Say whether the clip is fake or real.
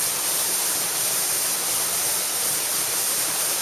real